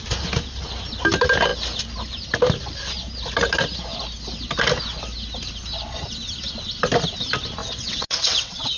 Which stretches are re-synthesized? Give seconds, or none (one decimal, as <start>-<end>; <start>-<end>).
7.6-8.8